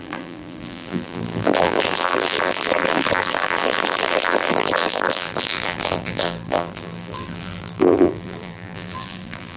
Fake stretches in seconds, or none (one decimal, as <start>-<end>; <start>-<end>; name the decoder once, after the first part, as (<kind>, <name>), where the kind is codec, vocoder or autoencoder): 0.0-9.6 (vocoder, BigVGAN v2)